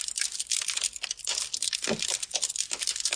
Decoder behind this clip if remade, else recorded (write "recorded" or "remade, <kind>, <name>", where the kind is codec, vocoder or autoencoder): recorded